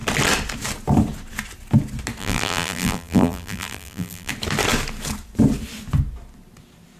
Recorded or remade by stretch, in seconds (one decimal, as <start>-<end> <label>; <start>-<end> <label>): 0.0-2.2 recorded; 2.2-4.3 remade; 4.3-7.0 recorded